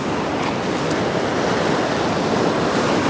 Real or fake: real